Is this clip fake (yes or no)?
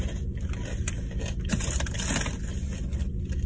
no